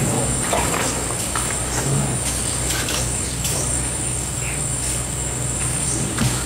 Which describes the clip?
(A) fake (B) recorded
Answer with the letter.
A